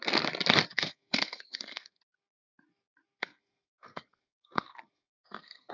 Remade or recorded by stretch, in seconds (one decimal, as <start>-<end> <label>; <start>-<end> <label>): 0.0-0.7 recorded; 0.7-2.0 remade; 2.0-3.2 recorded; 3.2-5.7 remade